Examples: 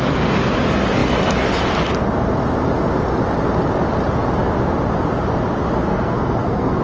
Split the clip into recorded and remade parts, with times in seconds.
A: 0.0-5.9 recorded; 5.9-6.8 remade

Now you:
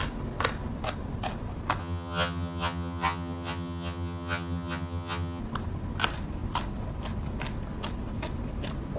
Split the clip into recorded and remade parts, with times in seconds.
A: 0.0-1.8 recorded; 1.8-5.4 remade; 5.4-9.0 recorded

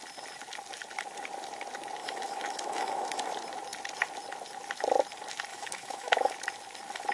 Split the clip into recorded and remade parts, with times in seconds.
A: 0.0-2.0 recorded; 2.0-3.3 remade; 3.3-5.5 recorded; 5.5-6.3 remade; 6.3-7.1 recorded

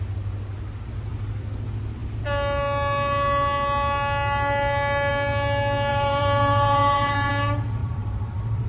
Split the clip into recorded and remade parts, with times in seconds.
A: 0.0-5.9 recorded; 5.9-7.3 remade; 7.3-7.8 recorded; 7.8-8.7 remade

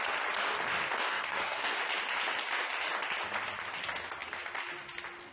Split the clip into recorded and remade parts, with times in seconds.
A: 0.0-1.1 recorded; 1.1-1.8 remade; 1.8-5.3 recorded